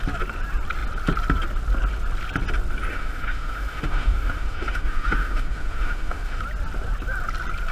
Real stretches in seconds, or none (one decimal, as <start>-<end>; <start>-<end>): 0.0-2.9; 6.4-7.7